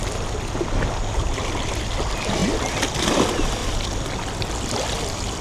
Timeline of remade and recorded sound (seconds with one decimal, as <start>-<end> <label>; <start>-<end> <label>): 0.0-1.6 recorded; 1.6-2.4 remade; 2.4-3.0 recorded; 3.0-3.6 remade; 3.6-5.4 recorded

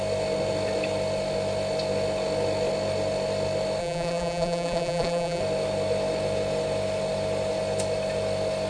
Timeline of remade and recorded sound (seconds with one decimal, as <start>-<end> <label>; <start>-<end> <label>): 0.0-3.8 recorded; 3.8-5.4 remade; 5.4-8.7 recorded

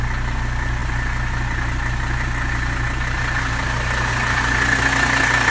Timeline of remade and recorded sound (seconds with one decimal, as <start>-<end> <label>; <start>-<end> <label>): 0.0-5.5 recorded

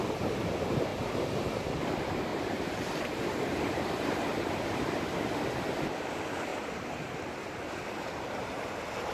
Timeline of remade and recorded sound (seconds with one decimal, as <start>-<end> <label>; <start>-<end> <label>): 0.0-0.9 recorded; 0.9-1.5 remade; 1.5-2.3 recorded; 2.3-3.2 remade; 3.2-4.3 recorded; 4.3-5.1 remade; 5.1-6.5 recorded; 6.5-7.2 remade; 7.2-9.1 recorded

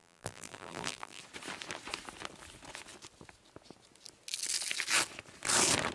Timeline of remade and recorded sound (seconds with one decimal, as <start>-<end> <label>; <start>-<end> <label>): 0.0-1.2 remade; 1.2-5.9 recorded